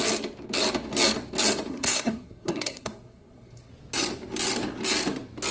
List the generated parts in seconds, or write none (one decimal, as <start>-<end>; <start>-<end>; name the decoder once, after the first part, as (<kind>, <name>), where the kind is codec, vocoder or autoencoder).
1.7-3.7 (codec, SNAC)